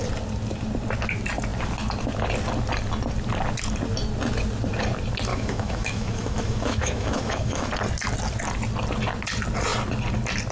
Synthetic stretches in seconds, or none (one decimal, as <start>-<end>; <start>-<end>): 5.3-7.7